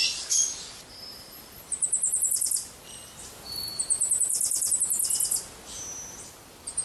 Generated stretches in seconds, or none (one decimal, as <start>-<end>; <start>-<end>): 1.1-5.2